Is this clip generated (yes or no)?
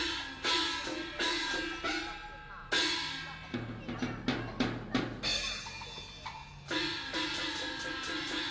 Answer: no